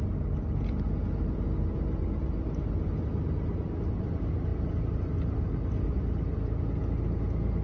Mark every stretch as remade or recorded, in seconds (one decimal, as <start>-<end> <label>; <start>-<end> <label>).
0.0-4.5 recorded; 4.5-6.4 remade; 6.4-7.6 recorded